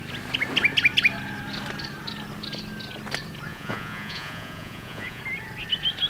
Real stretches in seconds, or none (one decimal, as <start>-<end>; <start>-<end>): 0.0-3.5; 5.2-6.1